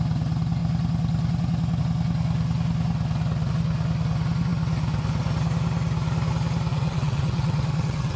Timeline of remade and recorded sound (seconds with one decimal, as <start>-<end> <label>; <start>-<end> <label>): 0.0-6.7 recorded; 6.7-8.2 remade